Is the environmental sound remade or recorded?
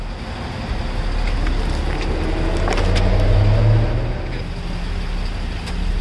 recorded